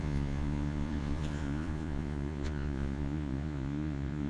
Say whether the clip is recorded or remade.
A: remade